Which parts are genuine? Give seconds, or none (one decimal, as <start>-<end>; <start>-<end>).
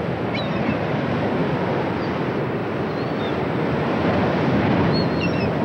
0.0-5.6